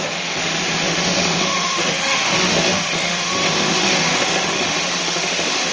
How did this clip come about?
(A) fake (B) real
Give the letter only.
A